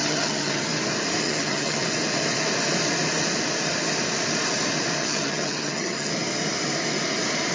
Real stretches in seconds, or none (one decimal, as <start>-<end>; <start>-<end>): 0.6-1.2; 1.8-5.0; 6.1-7.5